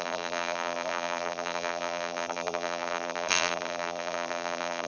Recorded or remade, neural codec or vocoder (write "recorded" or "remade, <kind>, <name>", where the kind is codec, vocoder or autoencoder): remade, vocoder, BigVGAN v2